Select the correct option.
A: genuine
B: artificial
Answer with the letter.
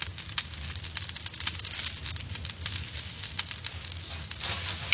A